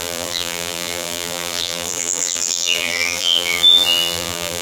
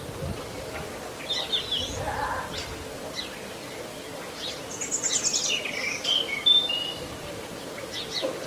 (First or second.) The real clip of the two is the second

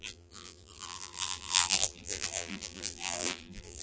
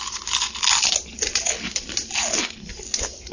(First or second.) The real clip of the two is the second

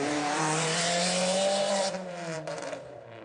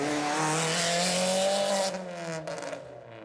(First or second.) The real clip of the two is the second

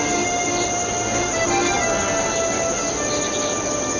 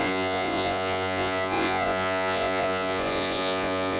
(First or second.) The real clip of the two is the first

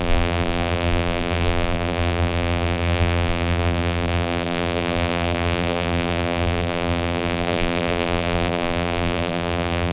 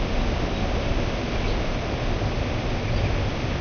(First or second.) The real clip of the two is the second